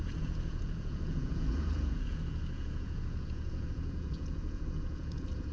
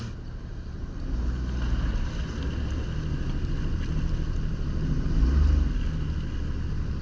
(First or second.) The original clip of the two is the second